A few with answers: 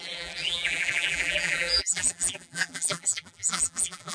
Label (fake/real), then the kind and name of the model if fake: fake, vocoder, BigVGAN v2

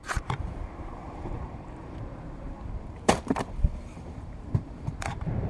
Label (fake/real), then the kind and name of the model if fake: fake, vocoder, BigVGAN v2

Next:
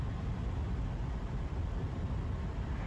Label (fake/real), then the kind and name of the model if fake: real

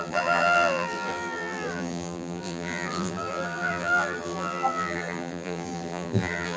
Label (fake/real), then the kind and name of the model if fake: fake, vocoder, BigVGAN v2